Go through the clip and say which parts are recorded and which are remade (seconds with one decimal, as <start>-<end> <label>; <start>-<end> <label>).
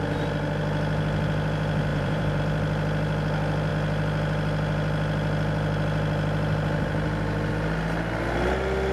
0.0-1.9 recorded; 1.9-2.4 remade; 2.4-8.9 recorded